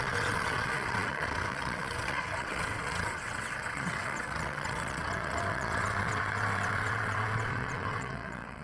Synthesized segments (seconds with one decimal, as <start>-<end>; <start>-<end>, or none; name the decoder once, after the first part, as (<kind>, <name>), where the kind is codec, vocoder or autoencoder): 0.0-8.6 (vocoder, WaveNeXt)